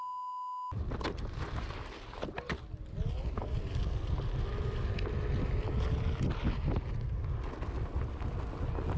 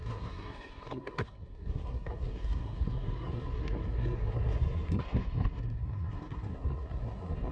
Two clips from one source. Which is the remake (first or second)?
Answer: second